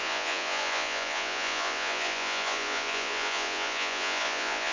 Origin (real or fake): fake